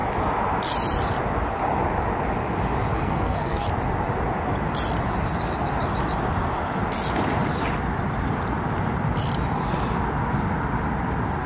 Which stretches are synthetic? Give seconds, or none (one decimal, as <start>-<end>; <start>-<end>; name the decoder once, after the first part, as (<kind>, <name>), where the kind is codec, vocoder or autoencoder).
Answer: 2.9-3.7 (codec, SNAC)